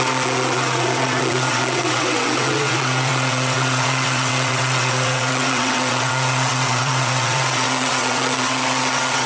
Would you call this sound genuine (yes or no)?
no